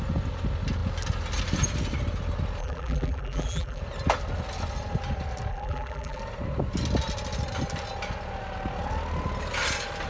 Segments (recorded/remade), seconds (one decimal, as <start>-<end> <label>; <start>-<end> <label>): 0.0-2.6 recorded; 2.6-3.8 remade; 3.8-5.5 recorded; 5.5-6.2 remade; 6.2-10.1 recorded